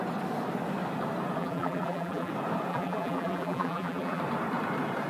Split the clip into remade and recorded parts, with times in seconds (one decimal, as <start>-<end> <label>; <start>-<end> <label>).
0.0-1.4 recorded; 1.4-2.3 remade; 2.3-2.7 recorded; 2.7-4.2 remade; 4.2-5.1 recorded